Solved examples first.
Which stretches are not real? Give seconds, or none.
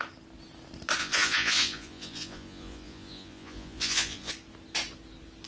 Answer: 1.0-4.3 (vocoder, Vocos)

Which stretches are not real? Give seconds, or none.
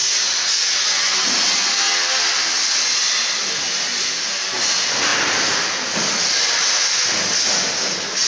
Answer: none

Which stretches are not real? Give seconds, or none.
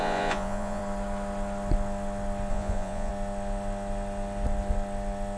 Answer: 0.0-0.8 (vocoder, Vocos); 2.5-3.1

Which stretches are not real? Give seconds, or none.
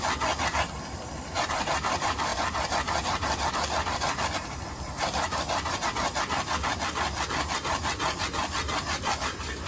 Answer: 0.0-2.3 (vocoder, BigVGAN v2); 3.5-9.7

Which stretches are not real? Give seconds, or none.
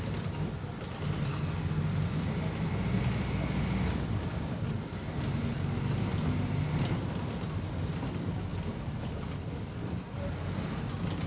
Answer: 6.1-6.8 (vocoder, BigVGAN v2); 8.5-10.1